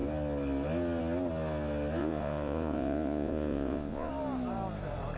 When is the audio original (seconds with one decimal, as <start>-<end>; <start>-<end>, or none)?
0.0-2.0; 4.1-5.2